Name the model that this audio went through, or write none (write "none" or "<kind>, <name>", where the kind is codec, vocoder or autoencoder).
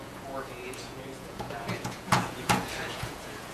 vocoder, Vocos